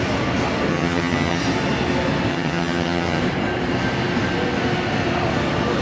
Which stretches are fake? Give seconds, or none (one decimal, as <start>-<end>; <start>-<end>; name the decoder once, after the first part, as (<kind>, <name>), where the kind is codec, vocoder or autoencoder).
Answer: 0.7-1.4 (vocoder, HiFi-GAN); 2.3-3.2